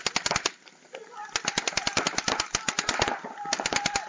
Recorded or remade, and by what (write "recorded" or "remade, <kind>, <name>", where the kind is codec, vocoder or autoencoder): recorded